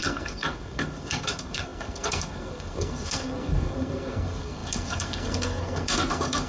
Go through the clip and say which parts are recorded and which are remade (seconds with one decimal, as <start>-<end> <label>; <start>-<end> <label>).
0.0-6.5 remade